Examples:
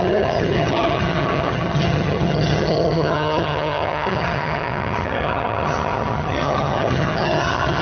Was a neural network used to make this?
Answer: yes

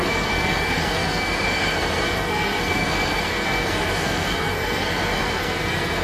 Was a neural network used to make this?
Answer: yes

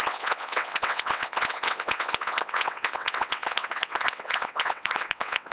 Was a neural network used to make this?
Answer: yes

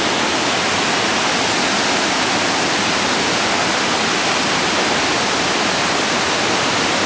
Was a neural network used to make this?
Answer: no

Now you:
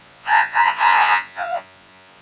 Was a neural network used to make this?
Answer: yes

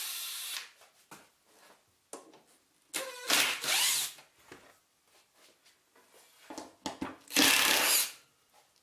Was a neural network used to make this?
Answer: no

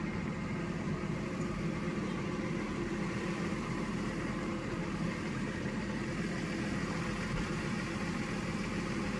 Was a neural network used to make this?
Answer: yes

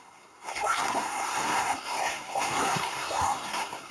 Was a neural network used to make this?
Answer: yes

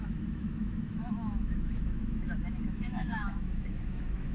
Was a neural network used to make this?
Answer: yes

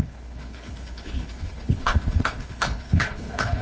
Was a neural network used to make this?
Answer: yes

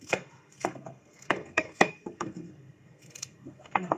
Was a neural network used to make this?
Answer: yes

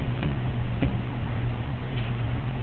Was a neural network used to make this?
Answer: yes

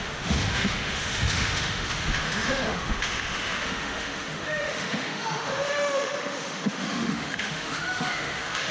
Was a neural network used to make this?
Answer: yes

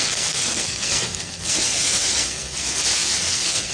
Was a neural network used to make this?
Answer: yes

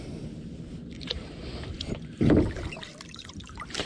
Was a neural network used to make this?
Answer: yes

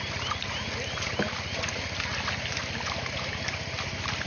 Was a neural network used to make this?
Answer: no